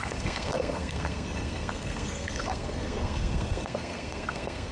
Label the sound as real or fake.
fake